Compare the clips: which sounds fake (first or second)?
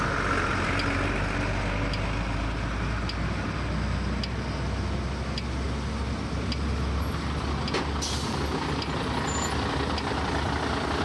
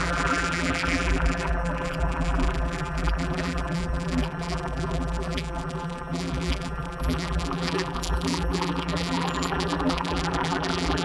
second